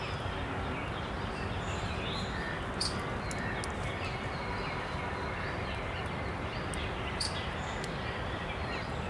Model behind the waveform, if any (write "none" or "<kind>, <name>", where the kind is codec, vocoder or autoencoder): none